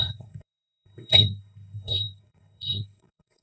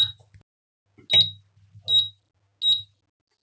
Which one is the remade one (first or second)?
first